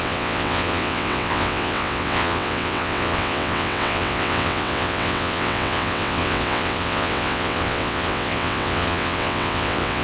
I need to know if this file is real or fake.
fake